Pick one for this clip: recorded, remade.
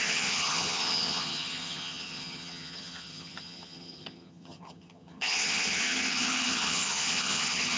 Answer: remade